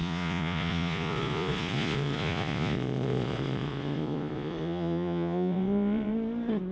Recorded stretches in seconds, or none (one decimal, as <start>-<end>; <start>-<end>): 6.1-6.7

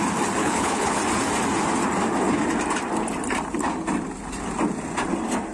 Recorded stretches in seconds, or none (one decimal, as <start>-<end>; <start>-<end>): 0.0-0.4; 1.0-5.5

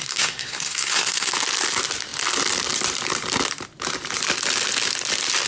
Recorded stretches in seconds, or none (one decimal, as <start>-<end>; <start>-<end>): 1.3-5.5

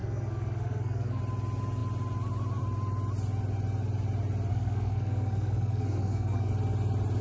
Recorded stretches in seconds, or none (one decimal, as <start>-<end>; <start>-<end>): 1.2-4.5; 6.5-7.2

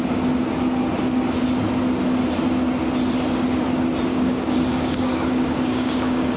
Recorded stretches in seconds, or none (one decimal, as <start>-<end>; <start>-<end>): 0.0-4.1

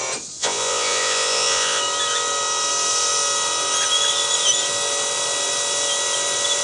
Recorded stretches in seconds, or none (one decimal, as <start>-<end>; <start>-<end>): 0.0-0.4; 1.8-6.6